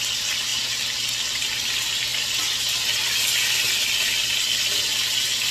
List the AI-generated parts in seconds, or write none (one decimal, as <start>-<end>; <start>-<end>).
none